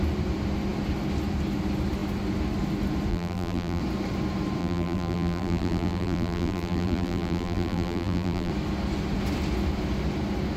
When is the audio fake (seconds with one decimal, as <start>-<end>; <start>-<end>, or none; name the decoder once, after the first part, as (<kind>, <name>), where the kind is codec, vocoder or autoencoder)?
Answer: 3.1-3.8 (vocoder, BigVGAN v2); 4.6-8.5